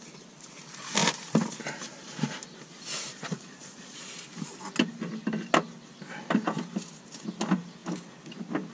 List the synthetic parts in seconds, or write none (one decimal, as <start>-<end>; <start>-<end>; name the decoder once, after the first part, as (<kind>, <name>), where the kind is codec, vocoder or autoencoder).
3.1-4.1 (vocoder, Vocos)